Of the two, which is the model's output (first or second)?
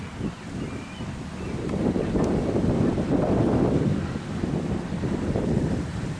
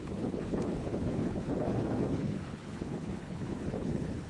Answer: second